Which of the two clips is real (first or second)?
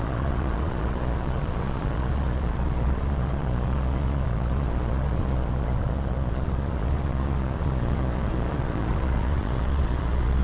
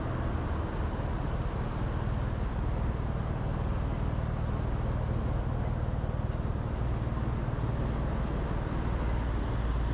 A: second